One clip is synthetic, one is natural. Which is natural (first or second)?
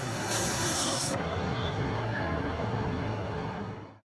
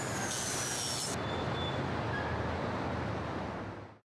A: second